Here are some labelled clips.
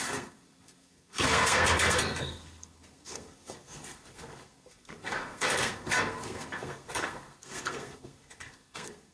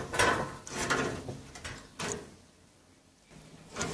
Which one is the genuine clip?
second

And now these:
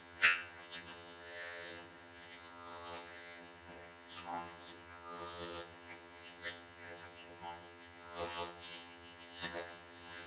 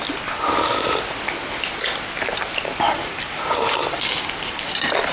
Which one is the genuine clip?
second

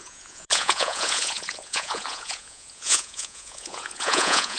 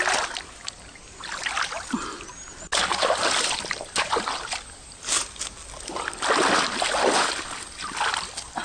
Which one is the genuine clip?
second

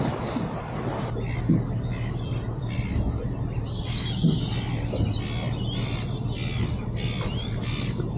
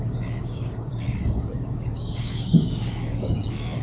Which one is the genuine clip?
first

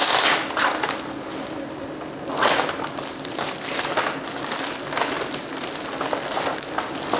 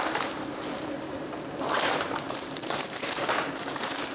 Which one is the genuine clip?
first